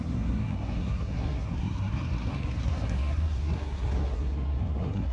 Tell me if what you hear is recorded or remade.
remade